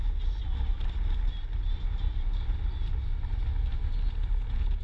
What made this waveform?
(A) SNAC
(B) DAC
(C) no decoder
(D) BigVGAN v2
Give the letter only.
C